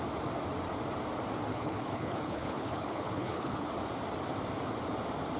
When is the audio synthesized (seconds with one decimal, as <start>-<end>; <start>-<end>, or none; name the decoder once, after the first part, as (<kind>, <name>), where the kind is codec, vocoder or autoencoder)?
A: 1.5-3.7 (codec, HILCodec)